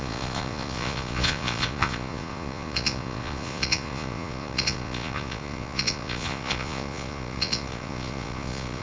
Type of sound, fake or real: fake